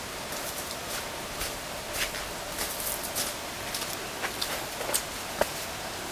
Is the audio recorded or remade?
recorded